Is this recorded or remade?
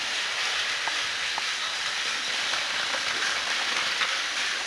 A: recorded